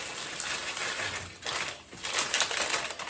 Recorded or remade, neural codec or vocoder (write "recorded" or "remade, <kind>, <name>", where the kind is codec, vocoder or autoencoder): recorded